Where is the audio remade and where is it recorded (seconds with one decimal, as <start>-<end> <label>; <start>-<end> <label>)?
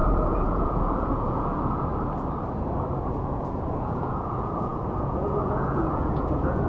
0.0-1.9 remade; 1.9-3.0 recorded; 3.0-6.7 remade